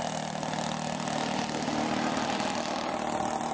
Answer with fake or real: real